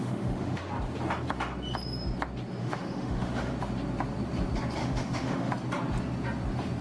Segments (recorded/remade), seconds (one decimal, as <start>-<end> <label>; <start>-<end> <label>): 0.0-0.6 remade; 0.6-2.6 recorded; 2.6-3.5 remade; 3.5-4.8 recorded; 4.8-5.5 remade; 5.5-6.8 recorded